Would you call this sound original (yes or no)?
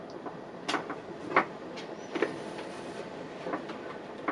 yes